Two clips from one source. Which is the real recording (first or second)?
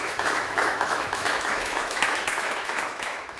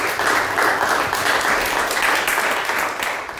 second